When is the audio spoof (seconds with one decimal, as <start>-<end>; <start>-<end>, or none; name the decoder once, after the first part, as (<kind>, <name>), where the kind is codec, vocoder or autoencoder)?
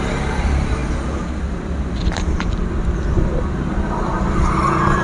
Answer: none